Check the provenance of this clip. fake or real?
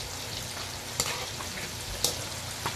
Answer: real